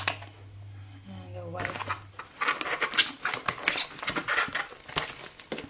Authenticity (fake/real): real